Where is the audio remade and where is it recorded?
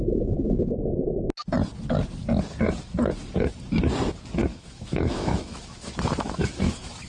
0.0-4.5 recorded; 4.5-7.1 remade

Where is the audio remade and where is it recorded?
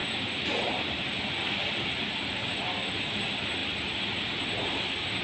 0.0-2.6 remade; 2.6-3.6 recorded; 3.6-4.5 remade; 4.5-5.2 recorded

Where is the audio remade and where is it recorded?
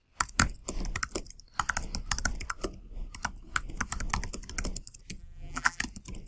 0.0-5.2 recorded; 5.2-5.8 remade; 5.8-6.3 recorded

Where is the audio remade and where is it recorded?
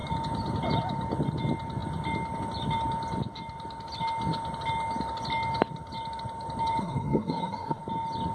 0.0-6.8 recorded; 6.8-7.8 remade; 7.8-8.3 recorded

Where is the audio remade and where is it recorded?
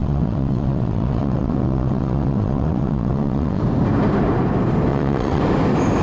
0.0-3.6 remade; 3.6-4.9 recorded; 4.9-5.4 remade; 5.4-6.0 recorded